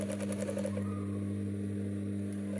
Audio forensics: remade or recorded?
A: recorded